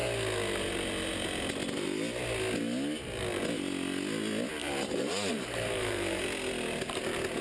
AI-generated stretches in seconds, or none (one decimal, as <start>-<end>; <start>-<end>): 4.6-6.2